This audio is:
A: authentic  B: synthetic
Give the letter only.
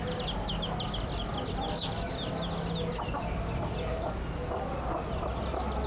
A